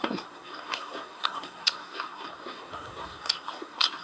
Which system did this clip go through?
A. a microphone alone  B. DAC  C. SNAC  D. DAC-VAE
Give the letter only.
C